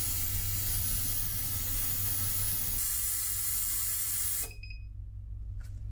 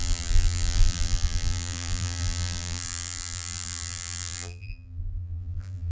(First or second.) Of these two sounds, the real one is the first